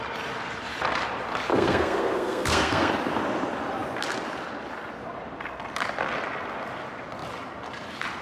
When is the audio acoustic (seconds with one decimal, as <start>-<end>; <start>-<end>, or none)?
0.0-1.5; 2.9-8.2